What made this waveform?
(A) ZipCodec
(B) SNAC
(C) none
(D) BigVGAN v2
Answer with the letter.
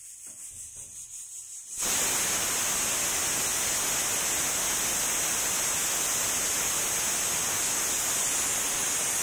C